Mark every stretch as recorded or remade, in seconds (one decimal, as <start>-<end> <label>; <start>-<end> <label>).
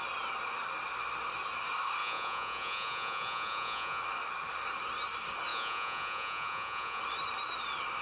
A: 0.0-2.0 recorded; 2.0-4.0 remade; 4.0-5.5 recorded; 5.5-7.0 remade; 7.0-8.0 recorded